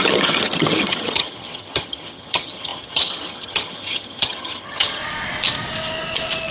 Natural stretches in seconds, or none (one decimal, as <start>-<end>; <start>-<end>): 5.0-6.5